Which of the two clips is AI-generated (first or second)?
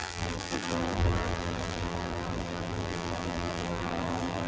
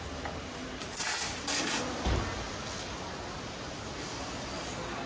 first